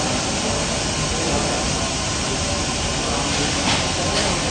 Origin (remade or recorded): recorded